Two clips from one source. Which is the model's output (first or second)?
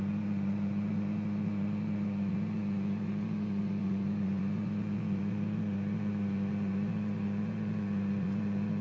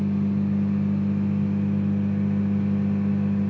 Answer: first